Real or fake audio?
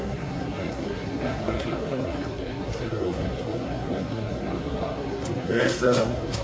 fake